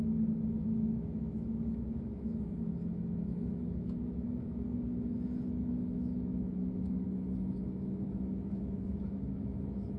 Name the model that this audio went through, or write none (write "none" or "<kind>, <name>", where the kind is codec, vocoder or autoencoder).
autoencoder, DAC-VAE